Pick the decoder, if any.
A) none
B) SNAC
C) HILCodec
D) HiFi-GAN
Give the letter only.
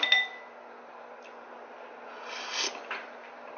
A